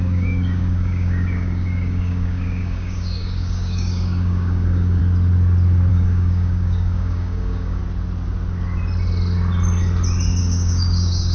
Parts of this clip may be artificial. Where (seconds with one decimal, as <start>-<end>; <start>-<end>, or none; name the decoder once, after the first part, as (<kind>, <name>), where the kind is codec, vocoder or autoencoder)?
0.0-5.0 (codec, DAC); 5.9-7.8; 10.4-11.3